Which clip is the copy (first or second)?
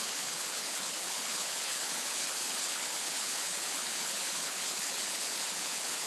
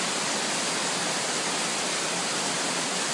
first